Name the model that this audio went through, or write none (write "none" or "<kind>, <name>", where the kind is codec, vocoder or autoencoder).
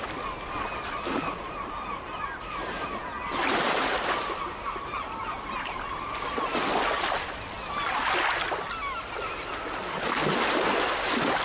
none